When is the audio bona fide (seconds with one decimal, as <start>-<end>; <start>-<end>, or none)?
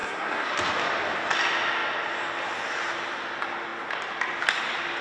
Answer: 0.5-5.0